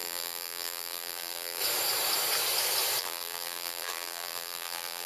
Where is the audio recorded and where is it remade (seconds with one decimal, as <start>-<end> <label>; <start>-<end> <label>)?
0.0-1.6 remade; 1.6-3.0 recorded; 3.0-5.1 remade